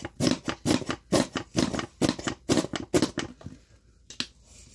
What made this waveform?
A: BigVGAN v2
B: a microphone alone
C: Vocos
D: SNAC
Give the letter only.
B